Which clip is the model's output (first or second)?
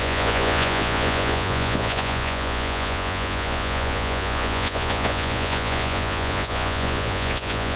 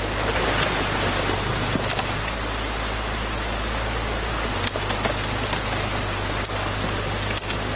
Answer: first